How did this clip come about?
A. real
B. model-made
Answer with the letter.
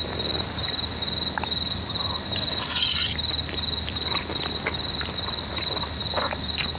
A